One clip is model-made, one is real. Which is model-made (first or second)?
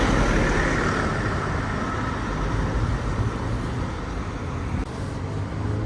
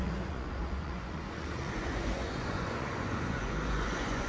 second